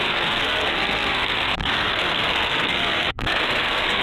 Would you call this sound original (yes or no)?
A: no